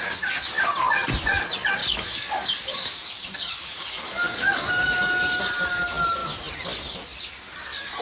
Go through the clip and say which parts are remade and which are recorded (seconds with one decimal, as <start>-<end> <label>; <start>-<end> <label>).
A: 0.0-1.8 recorded; 1.8-5.4 remade; 5.4-8.0 recorded